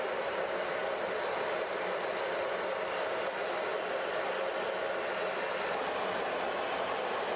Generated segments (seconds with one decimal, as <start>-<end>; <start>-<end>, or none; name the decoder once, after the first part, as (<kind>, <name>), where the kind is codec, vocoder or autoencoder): none